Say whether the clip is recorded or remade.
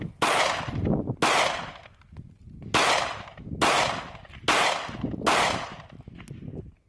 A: recorded